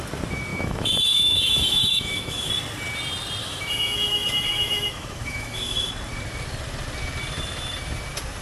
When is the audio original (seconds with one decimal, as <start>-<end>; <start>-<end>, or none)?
0.0-0.5; 2.5-3.4; 5.9-8.4